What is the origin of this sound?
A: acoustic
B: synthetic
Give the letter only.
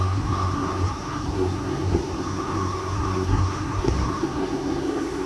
B